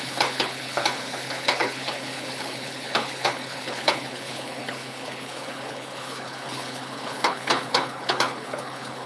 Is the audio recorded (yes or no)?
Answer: no